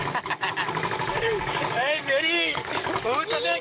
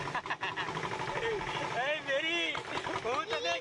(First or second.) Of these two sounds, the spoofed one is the first